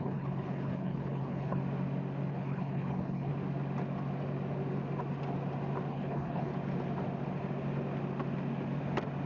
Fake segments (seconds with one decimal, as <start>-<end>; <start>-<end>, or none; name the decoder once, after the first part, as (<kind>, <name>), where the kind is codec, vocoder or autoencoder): 0.0-1.6 (codec, HILCodec); 2.3-3.3; 5.9-6.5